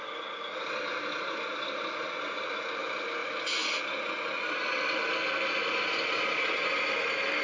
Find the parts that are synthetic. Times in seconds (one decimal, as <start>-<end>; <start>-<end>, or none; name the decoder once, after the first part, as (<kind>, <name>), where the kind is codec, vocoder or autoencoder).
3.2-3.8 (vocoder, BigVGAN v2)